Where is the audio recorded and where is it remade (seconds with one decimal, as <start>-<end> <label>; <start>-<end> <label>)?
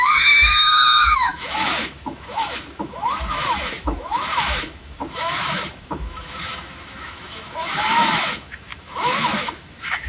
0.0-10.1 remade